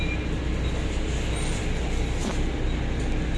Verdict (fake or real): real